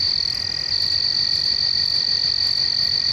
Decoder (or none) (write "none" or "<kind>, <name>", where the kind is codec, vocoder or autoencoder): none